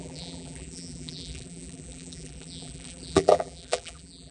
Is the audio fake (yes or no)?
yes